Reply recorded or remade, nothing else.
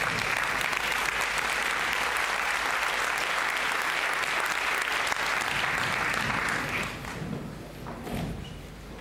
recorded